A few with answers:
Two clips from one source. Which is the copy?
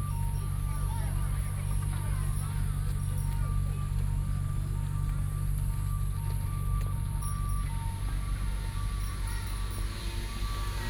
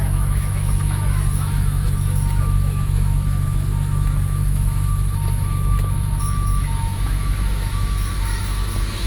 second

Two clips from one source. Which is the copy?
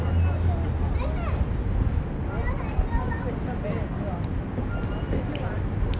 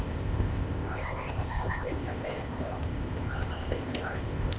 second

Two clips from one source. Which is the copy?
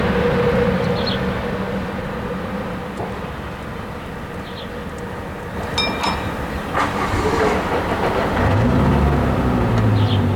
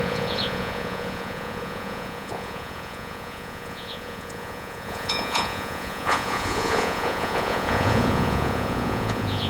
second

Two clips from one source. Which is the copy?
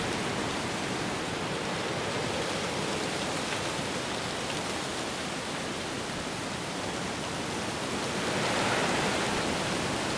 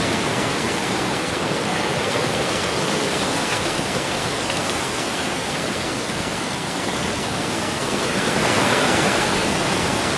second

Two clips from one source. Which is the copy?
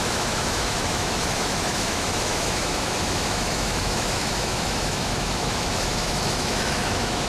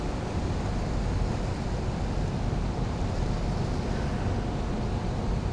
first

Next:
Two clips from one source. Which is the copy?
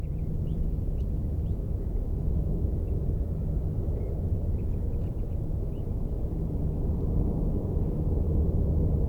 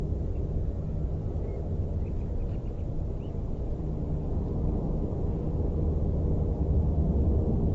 first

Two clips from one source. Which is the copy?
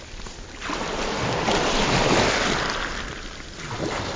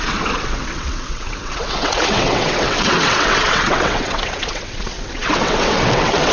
second